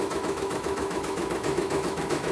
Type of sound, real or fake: fake